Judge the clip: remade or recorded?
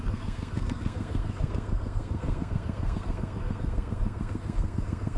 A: remade